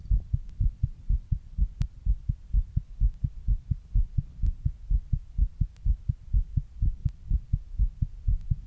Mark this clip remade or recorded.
recorded